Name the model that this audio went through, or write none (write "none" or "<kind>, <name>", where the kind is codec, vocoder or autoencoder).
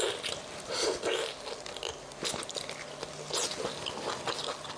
none